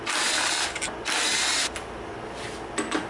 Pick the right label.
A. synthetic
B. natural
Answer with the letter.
B